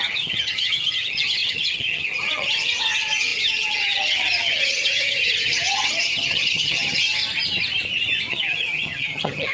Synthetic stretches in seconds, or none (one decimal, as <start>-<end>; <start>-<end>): 0.0-7.2; 8.3-9.5

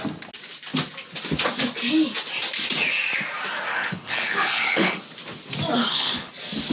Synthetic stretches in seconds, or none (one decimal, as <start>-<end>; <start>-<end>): 3.7-5.0; 5.8-6.3

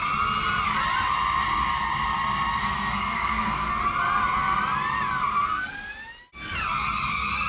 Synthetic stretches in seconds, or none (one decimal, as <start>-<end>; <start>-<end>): 2.6-3.7

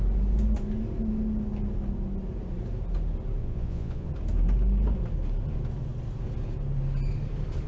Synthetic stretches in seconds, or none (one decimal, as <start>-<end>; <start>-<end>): 3.4-4.1

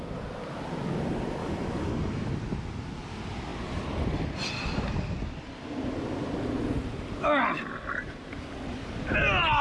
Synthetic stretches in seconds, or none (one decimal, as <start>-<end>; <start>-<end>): 1.4-2.3

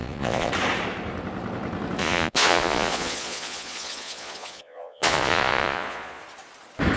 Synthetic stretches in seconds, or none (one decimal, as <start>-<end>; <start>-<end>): 0.0-0.5; 2.0-6.2

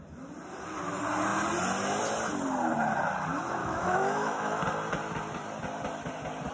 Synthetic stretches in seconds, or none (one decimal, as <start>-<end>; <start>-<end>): 3.6-4.6